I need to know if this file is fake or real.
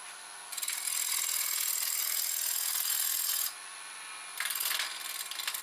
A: real